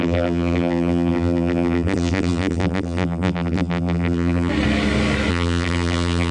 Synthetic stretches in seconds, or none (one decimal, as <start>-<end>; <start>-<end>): 0.0-4.5; 5.3-6.3